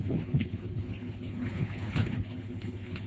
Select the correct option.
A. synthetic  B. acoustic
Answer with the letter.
A